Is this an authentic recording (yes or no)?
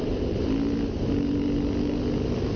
yes